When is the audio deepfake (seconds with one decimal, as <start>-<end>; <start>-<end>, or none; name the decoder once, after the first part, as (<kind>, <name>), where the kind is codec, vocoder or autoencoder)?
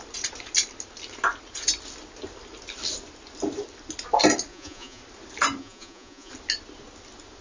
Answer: 4.5-5.0 (vocoder, Vocos); 5.6-6.3